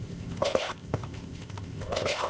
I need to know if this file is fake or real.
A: fake